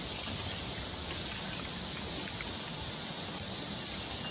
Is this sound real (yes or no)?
yes